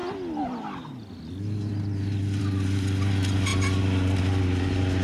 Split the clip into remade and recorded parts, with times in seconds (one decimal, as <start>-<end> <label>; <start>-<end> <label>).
0.0-5.0 recorded